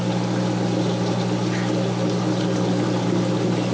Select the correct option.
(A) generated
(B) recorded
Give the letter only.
B